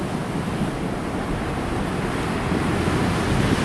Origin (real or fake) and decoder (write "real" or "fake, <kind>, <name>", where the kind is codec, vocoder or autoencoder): real